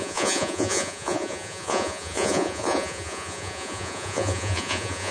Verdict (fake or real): fake